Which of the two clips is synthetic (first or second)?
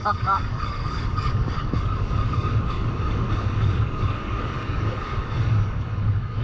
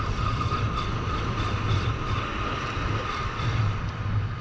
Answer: first